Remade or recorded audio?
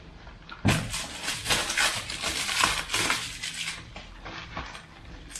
recorded